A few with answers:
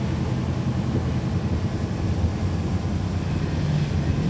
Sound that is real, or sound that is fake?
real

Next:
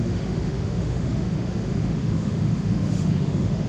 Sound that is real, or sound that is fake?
fake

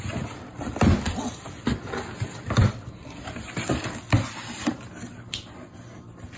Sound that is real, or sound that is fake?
real